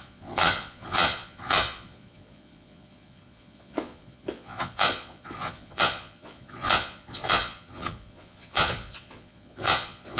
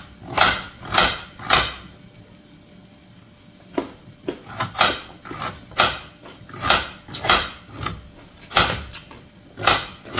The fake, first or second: first